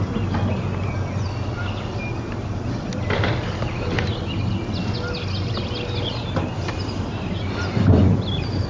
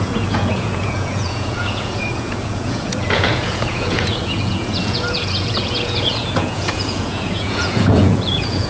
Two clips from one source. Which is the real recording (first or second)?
first